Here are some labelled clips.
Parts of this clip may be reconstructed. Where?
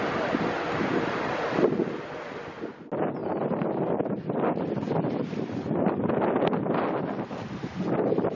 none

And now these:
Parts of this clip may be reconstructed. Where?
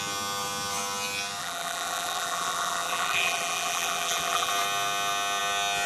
1.4-4.5 (vocoder, BigVGAN v2)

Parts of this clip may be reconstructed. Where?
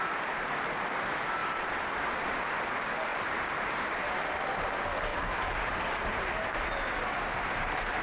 1.4-2.5 (vocoder, BigVGAN v2); 3.1-4.3; 5.1-6.3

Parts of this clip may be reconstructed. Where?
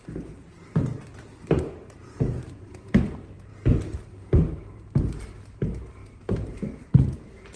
0.0-3.5 (vocoder, BigVGAN v2); 4.1-7.6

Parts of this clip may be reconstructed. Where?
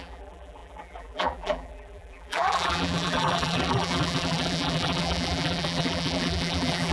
0.0-6.9 (vocoder, BigVGAN v2)